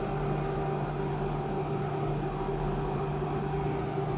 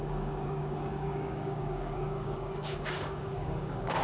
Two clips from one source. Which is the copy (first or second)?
second